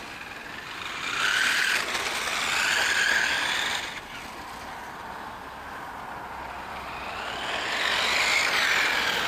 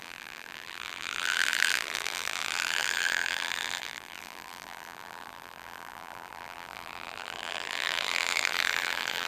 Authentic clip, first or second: first